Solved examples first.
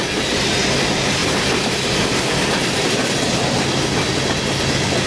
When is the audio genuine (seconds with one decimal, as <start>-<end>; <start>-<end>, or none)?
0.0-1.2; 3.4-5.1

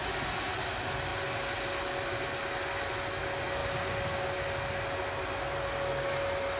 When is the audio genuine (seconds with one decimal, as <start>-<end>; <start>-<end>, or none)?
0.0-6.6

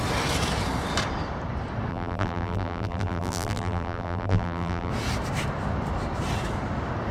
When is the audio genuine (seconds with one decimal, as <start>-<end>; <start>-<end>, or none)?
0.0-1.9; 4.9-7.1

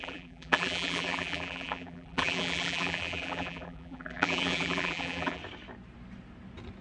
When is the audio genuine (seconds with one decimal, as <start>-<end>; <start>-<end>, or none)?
5.4-6.8

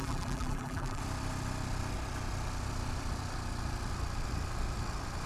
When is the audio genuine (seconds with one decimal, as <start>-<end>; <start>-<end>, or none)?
1.0-5.3